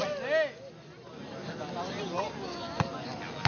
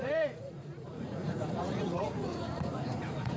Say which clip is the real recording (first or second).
first